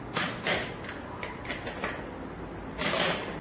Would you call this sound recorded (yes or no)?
yes